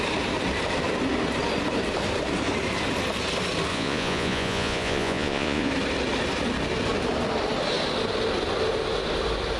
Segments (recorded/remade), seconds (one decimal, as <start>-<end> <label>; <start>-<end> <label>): 0.0-3.7 recorded; 3.7-5.7 remade; 5.7-9.6 recorded